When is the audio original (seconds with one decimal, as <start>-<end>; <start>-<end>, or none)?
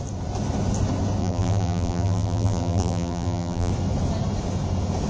0.0-1.2; 3.7-5.1